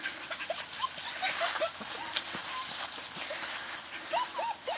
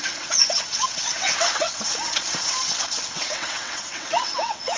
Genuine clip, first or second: first